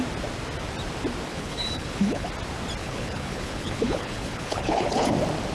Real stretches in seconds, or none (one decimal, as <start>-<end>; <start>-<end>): 0.0-1.3; 2.3-2.8; 5.1-5.5

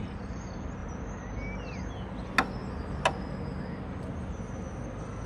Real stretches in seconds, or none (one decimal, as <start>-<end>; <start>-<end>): 0.0-5.3

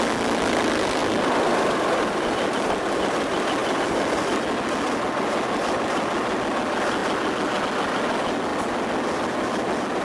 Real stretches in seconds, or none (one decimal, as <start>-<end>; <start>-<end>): 0.0-10.0

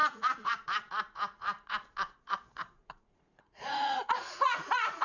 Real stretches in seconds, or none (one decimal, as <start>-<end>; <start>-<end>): none

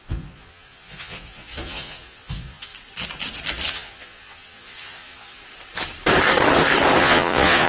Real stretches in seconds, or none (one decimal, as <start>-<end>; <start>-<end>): 2.7-3.7; 5.4-7.0

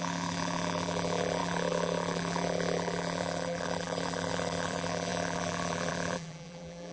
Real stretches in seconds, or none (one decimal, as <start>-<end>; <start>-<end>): none

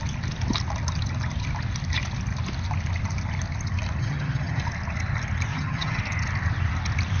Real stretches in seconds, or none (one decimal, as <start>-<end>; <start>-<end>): 0.0-4.0; 4.6-5.5; 6.0-7.2